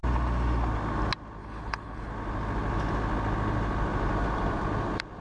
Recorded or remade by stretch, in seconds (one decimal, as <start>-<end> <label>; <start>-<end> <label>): 0.0-1.4 recorded; 1.4-2.1 remade; 2.1-5.2 recorded